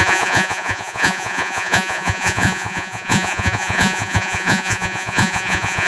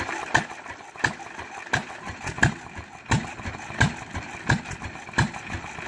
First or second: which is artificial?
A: first